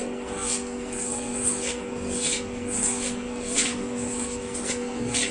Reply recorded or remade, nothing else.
remade